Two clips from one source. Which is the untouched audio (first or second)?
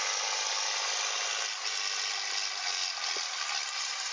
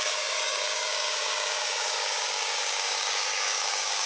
first